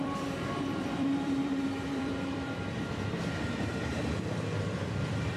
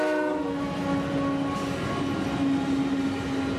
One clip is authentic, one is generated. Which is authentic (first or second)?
second